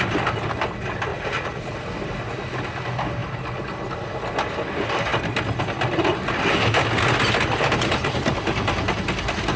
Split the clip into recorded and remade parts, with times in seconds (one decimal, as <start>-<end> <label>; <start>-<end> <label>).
0.0-1.1 recorded; 1.1-1.7 remade; 1.7-9.6 recorded